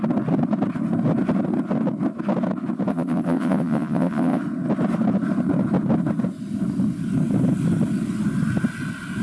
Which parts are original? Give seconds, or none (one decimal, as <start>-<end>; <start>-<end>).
0.0-2.9; 4.4-9.2